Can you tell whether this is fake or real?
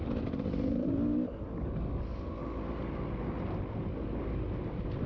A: real